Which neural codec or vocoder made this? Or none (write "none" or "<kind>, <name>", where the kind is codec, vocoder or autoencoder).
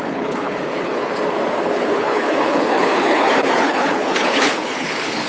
codec, HILCodec